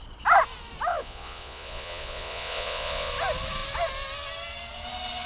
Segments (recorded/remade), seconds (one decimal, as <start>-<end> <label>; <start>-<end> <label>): 0.0-0.9 recorded; 0.9-3.1 remade; 3.1-5.3 recorded